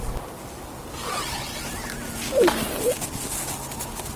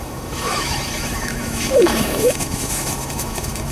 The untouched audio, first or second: first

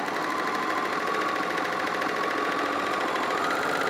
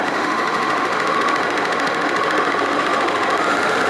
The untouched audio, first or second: first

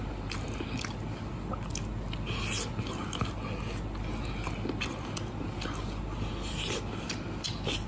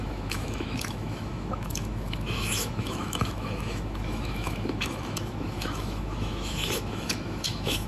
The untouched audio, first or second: first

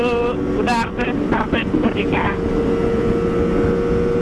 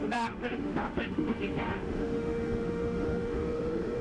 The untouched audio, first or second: first